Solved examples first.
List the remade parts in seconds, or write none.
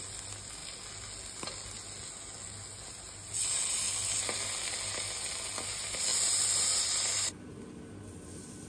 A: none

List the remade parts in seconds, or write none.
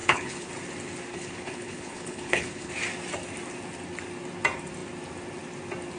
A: 0.0-0.5 (codec, HILCodec); 1.1-2.7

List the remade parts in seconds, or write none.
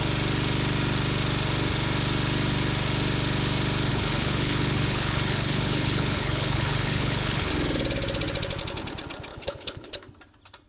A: 3.9-7.5 (codec, HILCodec); 9.3-10.1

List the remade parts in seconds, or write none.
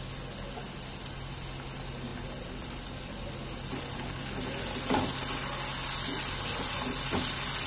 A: none